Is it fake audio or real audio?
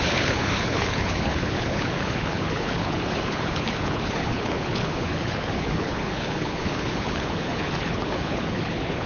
fake